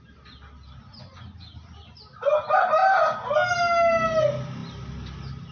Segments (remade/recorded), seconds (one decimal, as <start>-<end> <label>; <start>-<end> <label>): 0.0-5.5 recorded